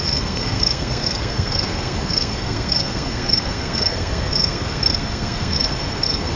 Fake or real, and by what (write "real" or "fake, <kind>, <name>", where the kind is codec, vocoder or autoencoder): fake, codec, SNAC